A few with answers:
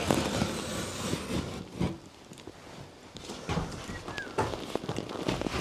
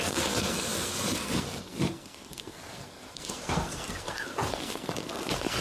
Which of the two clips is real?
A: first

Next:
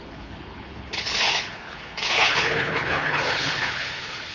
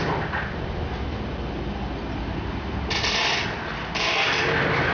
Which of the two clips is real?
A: second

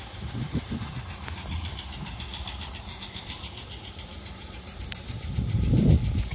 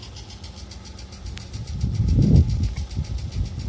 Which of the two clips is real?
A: second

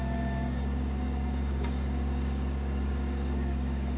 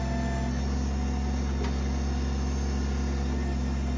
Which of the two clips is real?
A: second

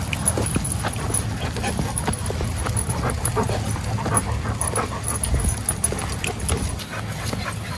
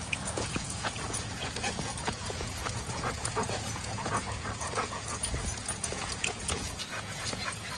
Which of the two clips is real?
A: first